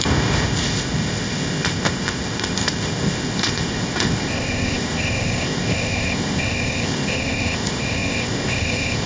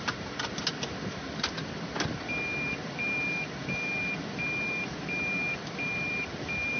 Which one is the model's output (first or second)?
first